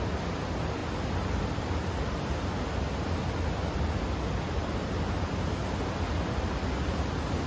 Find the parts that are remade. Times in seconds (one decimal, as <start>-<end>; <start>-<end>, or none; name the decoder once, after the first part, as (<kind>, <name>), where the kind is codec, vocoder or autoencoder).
none